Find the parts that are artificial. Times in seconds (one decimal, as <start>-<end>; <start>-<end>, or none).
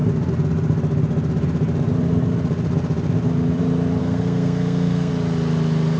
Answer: 4.0-5.1